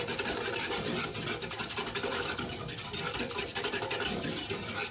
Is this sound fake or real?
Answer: real